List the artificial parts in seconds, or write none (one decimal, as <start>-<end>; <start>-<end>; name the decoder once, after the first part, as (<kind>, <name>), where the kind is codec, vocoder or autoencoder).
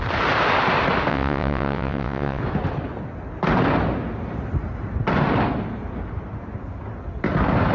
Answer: 1.1-2.4 (vocoder, WaveNeXt)